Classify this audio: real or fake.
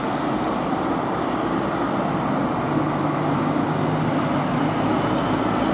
real